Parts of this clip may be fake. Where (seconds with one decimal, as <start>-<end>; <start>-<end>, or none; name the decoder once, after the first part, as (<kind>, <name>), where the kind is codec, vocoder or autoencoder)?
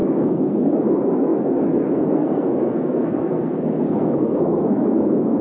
0.0-5.4 (codec, SNAC)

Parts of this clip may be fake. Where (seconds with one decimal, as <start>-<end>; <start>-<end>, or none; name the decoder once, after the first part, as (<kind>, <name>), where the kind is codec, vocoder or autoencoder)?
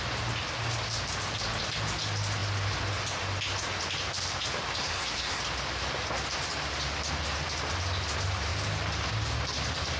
4.8-5.4 (codec, SNAC)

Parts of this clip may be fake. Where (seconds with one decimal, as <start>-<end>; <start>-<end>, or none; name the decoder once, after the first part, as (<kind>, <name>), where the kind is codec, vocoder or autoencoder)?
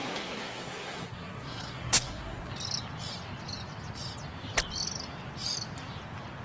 0.0-2.5 (codec, SNAC)